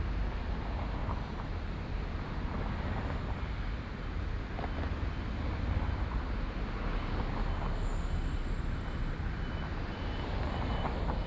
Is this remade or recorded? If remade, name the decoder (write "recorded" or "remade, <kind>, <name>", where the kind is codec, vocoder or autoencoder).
recorded